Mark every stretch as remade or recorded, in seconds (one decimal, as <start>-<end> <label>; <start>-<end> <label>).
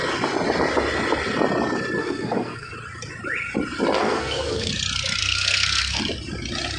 0.0-2.0 recorded; 2.0-2.7 remade; 2.7-4.0 recorded; 4.0-4.7 remade; 4.7-5.2 recorded; 5.2-6.0 remade; 6.0-6.8 recorded